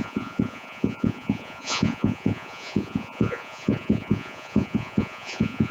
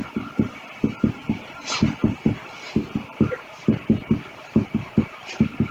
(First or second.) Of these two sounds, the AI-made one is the first